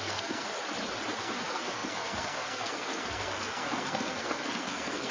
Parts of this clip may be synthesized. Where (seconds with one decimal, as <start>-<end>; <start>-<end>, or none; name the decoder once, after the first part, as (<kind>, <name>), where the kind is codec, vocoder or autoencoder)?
0.0-0.5 (codec, SNAC); 1.2-5.1